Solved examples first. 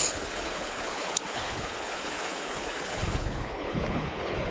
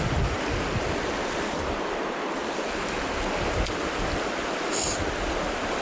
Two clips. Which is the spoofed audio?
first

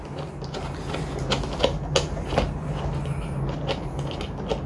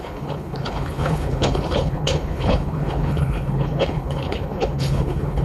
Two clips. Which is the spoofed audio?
second